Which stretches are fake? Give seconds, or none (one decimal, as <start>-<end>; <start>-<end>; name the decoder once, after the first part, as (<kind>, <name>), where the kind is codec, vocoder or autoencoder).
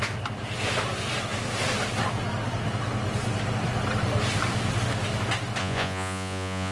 5.6-6.7 (vocoder, Vocos)